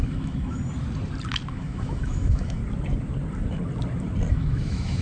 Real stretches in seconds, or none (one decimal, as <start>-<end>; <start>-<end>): 0.6-1.5; 2.6-4.3